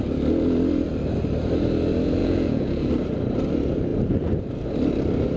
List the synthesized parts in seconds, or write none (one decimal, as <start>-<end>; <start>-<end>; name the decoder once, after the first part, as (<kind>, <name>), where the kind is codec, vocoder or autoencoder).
2.2-2.9 (vocoder, Vocos)